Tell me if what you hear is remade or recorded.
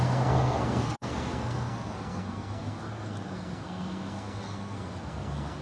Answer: remade